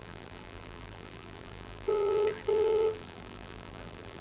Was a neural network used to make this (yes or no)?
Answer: yes